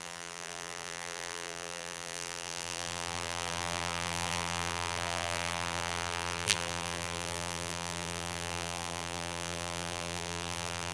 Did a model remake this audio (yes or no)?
yes